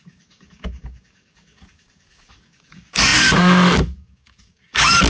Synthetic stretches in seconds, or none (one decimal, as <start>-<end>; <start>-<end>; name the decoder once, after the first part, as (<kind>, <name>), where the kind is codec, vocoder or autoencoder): 0.0-5.1 (codec, DAC)